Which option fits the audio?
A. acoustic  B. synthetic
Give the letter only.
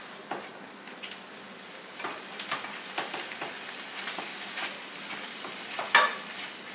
A